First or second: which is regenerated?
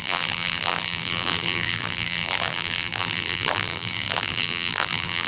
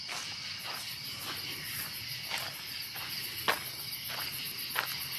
first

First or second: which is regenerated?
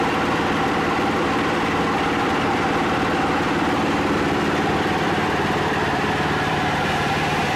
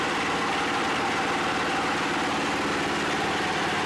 first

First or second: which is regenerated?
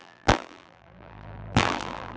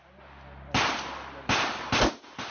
first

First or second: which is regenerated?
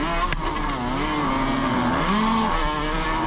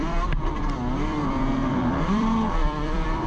second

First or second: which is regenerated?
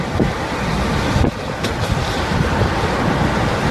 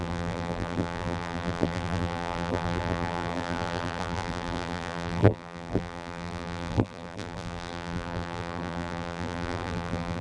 second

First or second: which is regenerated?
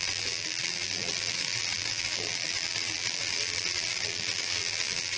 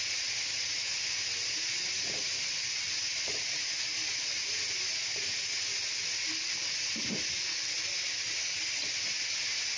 first